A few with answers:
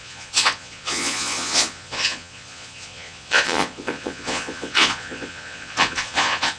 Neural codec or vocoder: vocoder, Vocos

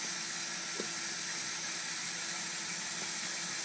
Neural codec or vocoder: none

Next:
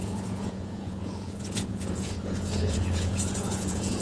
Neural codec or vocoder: vocoder, Vocos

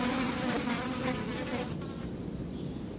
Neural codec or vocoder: none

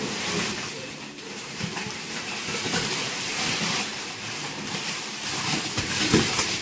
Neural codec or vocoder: vocoder, BigVGAN v2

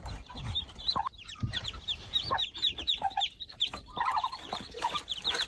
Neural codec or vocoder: vocoder, BigVGAN v2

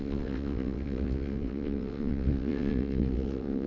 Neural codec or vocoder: vocoder, WaveNeXt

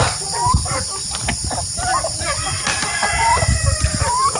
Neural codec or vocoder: none